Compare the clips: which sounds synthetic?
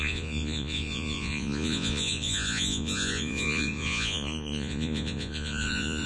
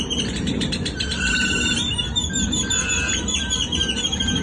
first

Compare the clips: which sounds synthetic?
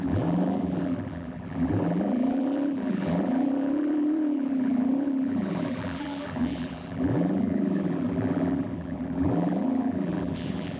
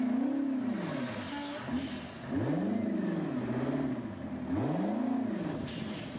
first